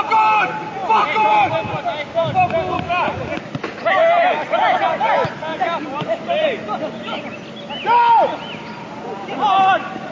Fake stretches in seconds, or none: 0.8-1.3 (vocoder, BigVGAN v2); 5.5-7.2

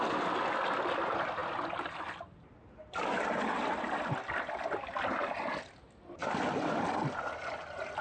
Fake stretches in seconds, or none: 6.2-7.3 (vocoder, BigVGAN v2)

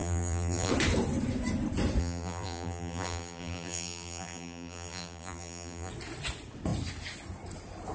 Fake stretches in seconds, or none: 0.0-0.7 (vocoder, BigVGAN v2); 2.0-5.9

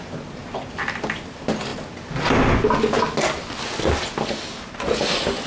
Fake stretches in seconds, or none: none